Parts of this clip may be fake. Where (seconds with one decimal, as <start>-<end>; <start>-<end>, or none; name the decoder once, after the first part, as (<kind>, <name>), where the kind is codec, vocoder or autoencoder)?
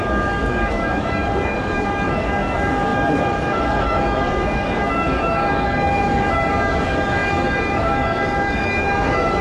0.0-9.4 (codec, DAC)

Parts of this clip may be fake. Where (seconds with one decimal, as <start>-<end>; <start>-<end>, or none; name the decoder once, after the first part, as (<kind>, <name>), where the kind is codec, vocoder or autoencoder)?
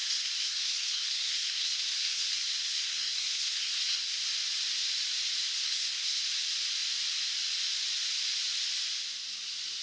0.0-4.2 (codec, SNAC); 5.5-6.2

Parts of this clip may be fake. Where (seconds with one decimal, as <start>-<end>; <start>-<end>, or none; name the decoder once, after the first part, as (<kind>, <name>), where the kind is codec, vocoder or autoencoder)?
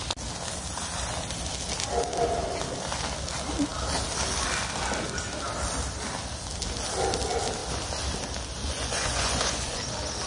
8.6-9.8 (vocoder, Vocos)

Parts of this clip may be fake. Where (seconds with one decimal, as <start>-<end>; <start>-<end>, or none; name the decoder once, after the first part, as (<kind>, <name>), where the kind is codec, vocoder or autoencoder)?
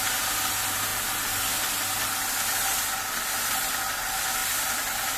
none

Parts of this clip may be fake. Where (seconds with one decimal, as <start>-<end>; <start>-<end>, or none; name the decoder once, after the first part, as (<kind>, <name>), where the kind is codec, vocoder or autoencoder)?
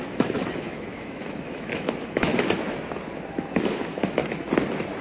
0.0-2.3 (autoencoder, DAC-VAE); 3.3-4.2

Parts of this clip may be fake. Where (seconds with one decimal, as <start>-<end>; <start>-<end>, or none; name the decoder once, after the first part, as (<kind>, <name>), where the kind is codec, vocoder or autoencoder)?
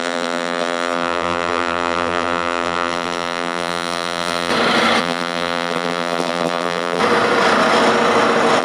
0.0-4.5 (vocoder, BigVGAN v2); 5.0-7.0